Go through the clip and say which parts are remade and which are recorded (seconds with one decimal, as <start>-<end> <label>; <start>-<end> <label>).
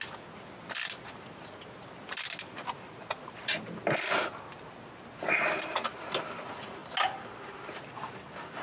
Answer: 0.0-8.6 recorded